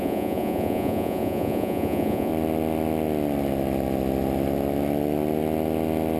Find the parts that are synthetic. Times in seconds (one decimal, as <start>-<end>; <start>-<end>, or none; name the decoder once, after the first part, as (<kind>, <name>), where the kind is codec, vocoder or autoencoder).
0.0-2.3 (vocoder, Vocos)

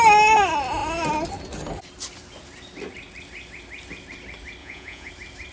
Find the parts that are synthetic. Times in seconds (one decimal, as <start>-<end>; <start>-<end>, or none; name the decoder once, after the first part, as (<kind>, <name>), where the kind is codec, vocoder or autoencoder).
4.6-5.1 (vocoder, Vocos)

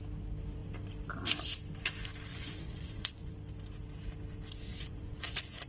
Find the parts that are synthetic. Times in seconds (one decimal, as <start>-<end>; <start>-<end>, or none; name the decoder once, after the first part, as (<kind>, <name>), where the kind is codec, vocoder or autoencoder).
2.3-3.3 (vocoder, Vocos); 4.7-5.7

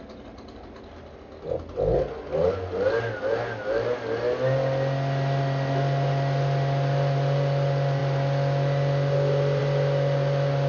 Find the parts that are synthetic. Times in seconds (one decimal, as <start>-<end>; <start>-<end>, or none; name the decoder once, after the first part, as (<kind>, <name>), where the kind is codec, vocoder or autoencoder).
none